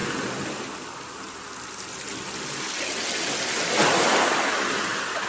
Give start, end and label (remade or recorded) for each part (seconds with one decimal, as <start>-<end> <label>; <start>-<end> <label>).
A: 0.0-5.3 recorded